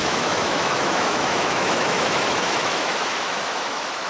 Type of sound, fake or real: fake